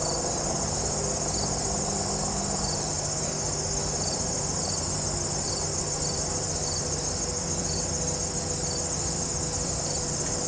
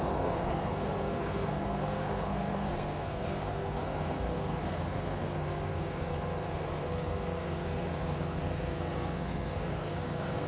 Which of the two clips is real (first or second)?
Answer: first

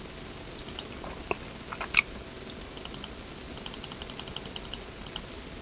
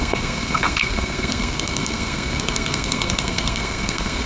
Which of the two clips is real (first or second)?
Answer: first